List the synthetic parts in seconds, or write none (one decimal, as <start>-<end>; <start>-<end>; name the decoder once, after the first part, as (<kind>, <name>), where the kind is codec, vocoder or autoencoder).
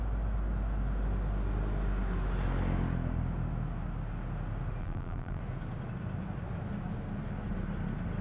4.8-5.4 (vocoder, BigVGAN v2)